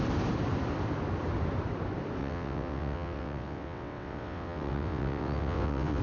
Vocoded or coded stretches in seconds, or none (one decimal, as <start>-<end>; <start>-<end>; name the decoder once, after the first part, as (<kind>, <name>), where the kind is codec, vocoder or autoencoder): 2.2-6.0 (vocoder, WaveNeXt)